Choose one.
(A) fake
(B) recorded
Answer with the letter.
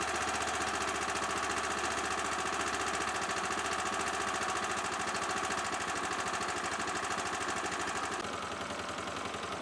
B